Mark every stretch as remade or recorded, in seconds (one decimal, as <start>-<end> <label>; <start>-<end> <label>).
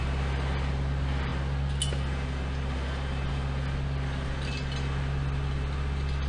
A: 0.0-6.3 recorded